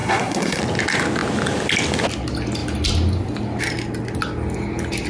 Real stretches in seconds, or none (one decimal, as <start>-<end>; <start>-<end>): 0.6-5.1